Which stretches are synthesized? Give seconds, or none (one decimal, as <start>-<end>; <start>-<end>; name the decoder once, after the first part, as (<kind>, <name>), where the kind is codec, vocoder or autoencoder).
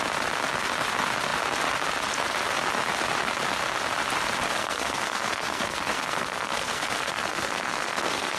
4.5-8.4 (codec, SNAC)